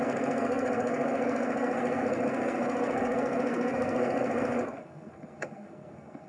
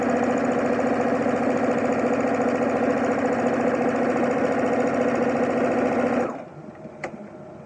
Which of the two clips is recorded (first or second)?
second